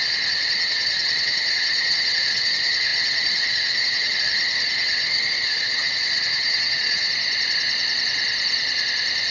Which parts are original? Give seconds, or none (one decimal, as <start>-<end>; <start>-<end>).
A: 7.1-9.3